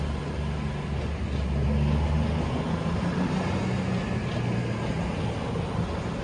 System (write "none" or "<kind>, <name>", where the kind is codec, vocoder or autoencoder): none